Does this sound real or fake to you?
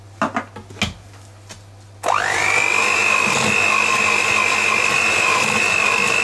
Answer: real